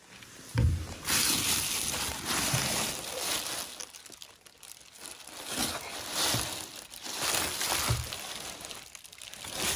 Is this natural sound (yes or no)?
yes